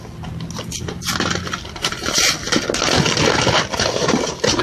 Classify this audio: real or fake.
real